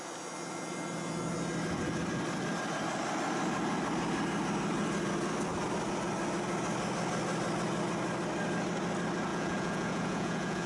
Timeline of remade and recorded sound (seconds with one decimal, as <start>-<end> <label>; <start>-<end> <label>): 0.0-9.3 recorded; 9.3-10.7 remade

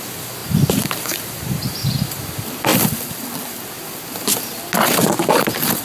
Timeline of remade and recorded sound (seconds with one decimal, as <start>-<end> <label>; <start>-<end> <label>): 0.0-5.8 recorded

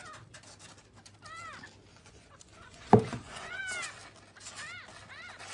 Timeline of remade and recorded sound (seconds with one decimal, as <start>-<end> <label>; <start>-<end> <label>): 0.0-1.9 recorded; 1.9-3.6 remade; 3.6-5.5 recorded

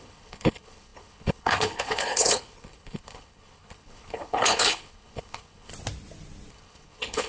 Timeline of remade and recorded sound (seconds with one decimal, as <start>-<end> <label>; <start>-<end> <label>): 0.0-5.7 remade; 5.7-6.5 recorded; 6.5-7.3 remade

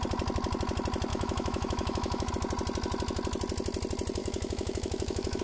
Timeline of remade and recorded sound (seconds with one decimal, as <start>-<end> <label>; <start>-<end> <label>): 0.0-1.1 recorded; 1.1-2.3 remade; 2.3-4.2 recorded; 4.2-5.4 remade